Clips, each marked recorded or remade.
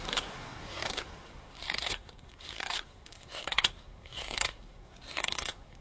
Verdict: remade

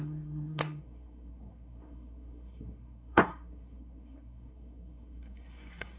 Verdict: remade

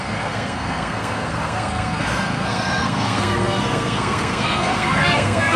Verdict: remade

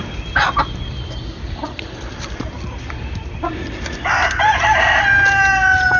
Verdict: recorded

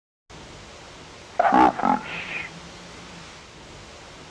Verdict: recorded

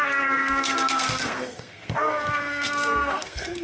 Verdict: remade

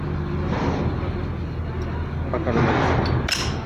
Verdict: recorded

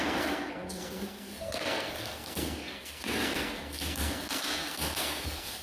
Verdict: remade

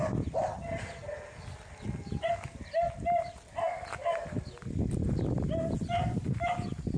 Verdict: recorded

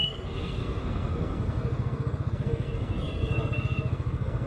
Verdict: remade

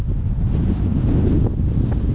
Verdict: recorded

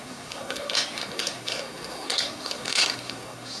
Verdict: remade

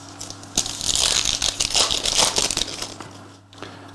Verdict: recorded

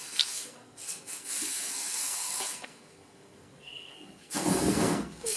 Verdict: remade